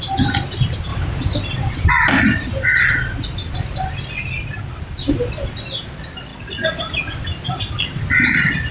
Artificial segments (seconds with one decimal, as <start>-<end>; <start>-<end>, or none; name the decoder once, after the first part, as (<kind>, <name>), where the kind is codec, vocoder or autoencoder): 0.9-1.9 (vocoder, BigVGAN v2)